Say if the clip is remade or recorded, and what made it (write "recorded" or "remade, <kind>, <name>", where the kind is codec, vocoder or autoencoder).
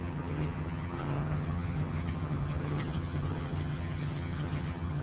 remade, vocoder, HiFi-GAN